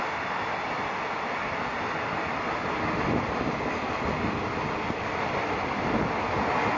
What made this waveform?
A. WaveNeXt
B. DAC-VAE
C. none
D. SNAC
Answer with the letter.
C